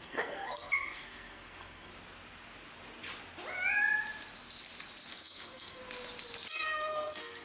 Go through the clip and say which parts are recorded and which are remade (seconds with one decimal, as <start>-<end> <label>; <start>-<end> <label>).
0.0-1.9 remade; 1.9-5.1 recorded; 5.1-5.8 remade; 5.8-6.5 recorded; 6.5-7.4 remade